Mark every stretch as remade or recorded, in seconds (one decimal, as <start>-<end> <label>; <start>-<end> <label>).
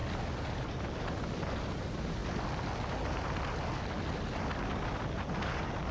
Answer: 0.0-5.9 recorded